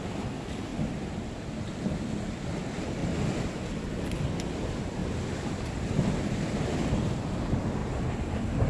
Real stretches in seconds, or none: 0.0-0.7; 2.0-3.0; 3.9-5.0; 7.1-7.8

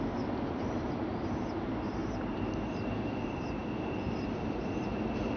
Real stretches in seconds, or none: 3.6-4.2

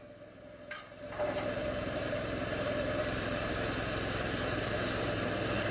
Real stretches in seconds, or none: 0.0-1.6; 5.0-5.7

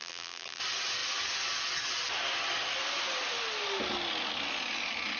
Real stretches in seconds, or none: 0.6-5.2

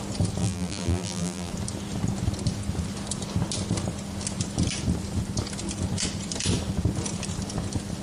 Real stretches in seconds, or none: 0.0-0.4; 1.5-8.0

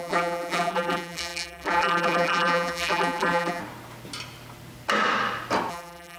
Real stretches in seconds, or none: 3.6-5.7

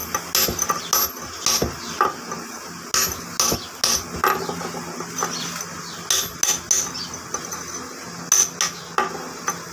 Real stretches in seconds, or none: 0.0-9.7

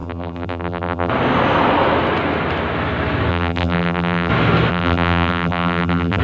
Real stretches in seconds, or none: 1.1-3.3; 4.3-4.7